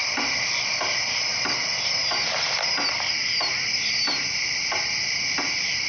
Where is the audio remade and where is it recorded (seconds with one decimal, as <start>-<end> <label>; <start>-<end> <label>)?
0.0-5.9 recorded